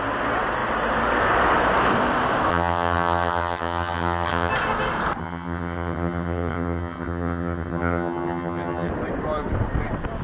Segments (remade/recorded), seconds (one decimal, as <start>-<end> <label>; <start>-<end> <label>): 0.0-2.5 recorded; 2.5-4.5 remade; 4.5-5.2 recorded; 5.2-8.9 remade; 8.9-10.2 recorded